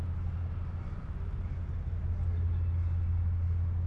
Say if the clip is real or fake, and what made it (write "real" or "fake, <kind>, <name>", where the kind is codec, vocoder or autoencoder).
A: real